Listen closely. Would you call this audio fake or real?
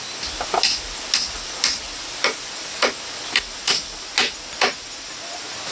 real